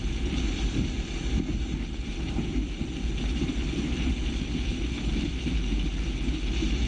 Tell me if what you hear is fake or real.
real